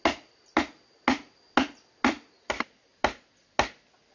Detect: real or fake real